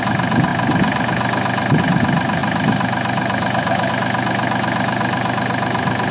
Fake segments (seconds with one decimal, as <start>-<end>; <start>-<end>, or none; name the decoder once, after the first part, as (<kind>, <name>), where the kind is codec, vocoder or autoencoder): 2.4-3.9 (vocoder, BigVGAN v2)